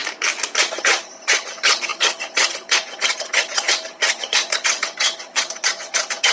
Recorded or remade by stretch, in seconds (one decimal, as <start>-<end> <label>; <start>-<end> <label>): 0.0-0.6 recorded; 0.6-6.3 remade